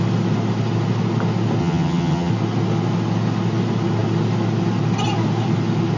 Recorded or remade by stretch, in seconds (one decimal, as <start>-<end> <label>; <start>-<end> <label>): 0.0-1.6 recorded; 1.6-2.3 remade; 2.3-6.0 recorded